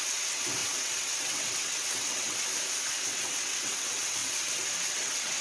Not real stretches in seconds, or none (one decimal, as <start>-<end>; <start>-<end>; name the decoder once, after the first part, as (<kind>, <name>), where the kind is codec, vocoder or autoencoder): 0.0-2.5 (vocoder, WaveNeXt); 3.1-5.4